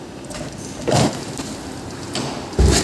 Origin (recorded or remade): recorded